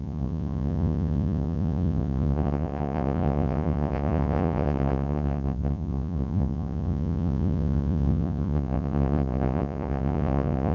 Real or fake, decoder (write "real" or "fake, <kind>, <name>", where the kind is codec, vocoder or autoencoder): fake, vocoder, Vocos